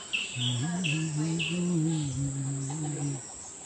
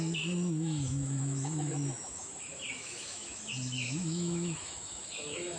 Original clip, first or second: first